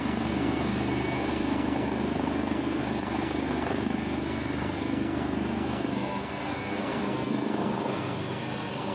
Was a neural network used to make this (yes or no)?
yes